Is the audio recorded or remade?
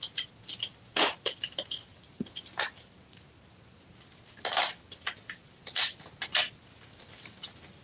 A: recorded